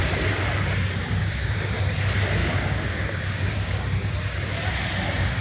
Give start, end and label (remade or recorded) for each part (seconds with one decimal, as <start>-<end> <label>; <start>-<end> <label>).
0.0-1.0 recorded; 1.0-1.8 remade; 1.8-2.4 recorded; 2.4-4.1 remade; 4.1-5.4 recorded